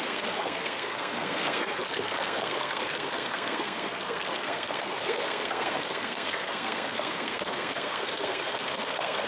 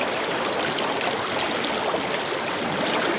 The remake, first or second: first